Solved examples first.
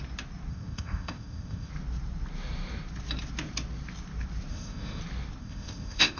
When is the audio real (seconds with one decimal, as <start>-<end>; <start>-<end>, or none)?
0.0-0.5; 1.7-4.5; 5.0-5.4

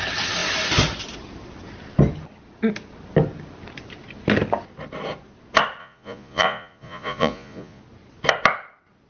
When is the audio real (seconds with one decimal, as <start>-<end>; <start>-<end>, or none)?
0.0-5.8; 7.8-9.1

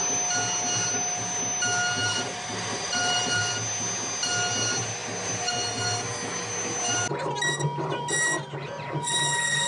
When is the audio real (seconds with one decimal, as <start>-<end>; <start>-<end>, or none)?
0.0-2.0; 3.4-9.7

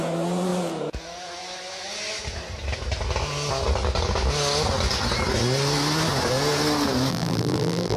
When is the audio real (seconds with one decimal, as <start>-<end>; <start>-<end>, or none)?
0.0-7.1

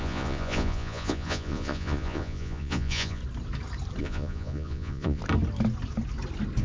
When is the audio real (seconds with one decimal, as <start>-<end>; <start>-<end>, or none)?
3.2-4.0; 5.2-6.6

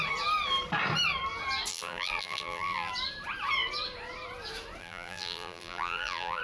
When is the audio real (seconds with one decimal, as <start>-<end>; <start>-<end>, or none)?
0.0-1.7; 2.9-4.8